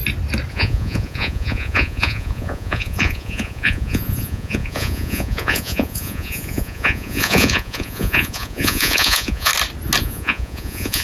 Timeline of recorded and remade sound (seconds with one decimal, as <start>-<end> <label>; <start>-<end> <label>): 0.0-0.5 recorded; 0.5-9.5 remade; 9.5-10.0 recorded; 10.0-11.0 remade